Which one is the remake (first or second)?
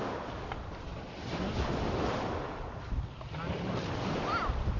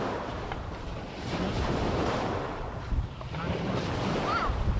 second